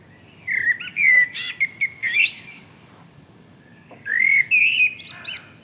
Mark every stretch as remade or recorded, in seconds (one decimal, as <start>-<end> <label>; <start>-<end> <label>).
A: 0.0-0.9 recorded; 0.9-1.5 remade; 1.5-2.0 recorded; 2.0-4.6 remade; 4.6-5.6 recorded